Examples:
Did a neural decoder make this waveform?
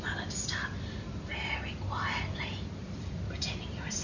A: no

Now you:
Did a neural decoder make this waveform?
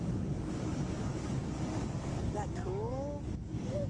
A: yes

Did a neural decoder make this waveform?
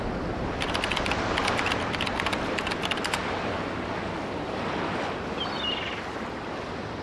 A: no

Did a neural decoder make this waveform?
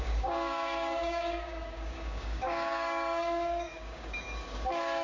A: yes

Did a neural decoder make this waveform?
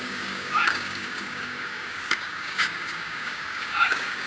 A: yes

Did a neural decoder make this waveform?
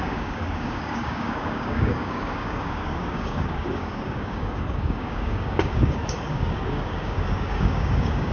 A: yes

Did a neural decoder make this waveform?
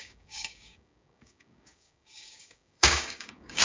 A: yes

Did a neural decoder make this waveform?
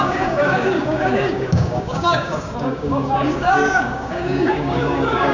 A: yes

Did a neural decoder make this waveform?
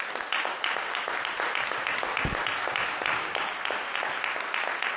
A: no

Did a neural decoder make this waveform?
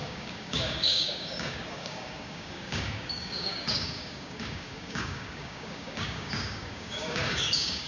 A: yes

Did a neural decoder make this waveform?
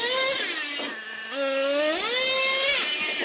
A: no